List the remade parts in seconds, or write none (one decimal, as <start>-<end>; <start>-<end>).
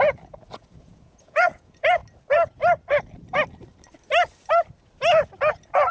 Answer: 0.0-2.0; 5.5-5.9